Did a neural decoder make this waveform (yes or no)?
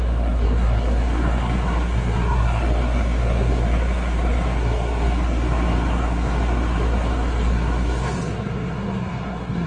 yes